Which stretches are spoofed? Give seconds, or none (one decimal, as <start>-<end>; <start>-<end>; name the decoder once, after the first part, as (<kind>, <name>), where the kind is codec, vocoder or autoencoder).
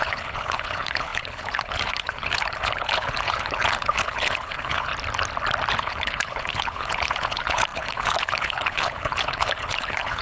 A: 0.0-4.9 (codec, HILCodec); 5.8-10.2